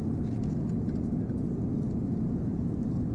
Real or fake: real